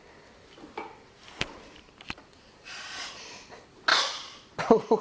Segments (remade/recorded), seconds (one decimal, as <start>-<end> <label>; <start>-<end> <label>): 0.0-2.3 recorded; 2.3-3.2 remade; 3.2-3.9 recorded; 3.9-4.6 remade; 4.6-5.0 recorded